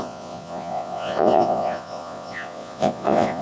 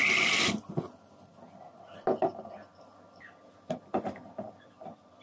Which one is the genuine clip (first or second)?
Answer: second